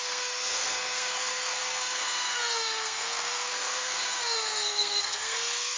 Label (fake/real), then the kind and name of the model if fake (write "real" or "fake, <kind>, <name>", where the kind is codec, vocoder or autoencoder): fake, codec, SNAC